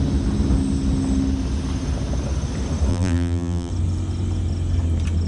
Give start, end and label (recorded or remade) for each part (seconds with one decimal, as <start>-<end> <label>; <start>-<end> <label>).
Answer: 0.0-2.9 recorded; 2.9-3.7 remade; 3.7-5.3 recorded